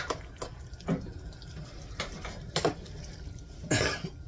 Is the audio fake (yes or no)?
no